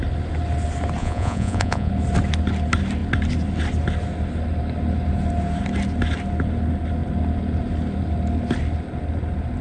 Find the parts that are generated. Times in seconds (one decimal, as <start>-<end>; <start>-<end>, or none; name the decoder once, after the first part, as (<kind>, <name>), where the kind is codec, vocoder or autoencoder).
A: 1.0-1.9 (vocoder, Vocos)